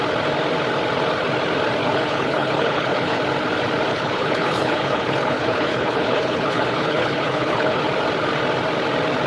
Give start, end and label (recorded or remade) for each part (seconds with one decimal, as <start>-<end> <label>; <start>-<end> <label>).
0.0-1.8 recorded; 1.8-3.2 remade; 3.2-3.9 recorded; 3.9-7.8 remade; 7.8-9.3 recorded